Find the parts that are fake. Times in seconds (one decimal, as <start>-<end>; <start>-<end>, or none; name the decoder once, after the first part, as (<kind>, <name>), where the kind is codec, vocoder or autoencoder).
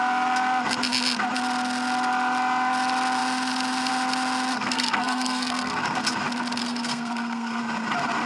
4.5-5.8 (codec, SNAC); 6.6-7.6